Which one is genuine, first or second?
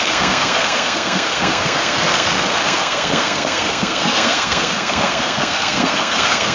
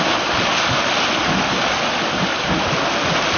second